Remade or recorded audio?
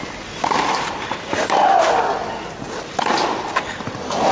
remade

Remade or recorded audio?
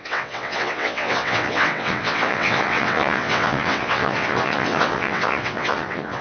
remade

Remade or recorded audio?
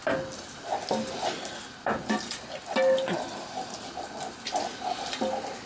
recorded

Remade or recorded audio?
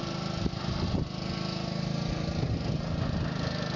recorded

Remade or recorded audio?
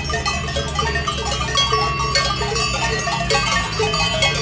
recorded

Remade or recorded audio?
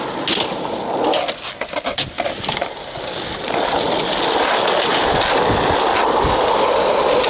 recorded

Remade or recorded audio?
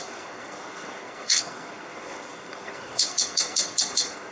remade